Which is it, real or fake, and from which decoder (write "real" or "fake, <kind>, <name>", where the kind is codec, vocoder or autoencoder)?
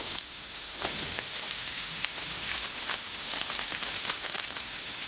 fake, autoencoder, DAC-VAE